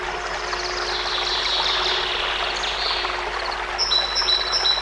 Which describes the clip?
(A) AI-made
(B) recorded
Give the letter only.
B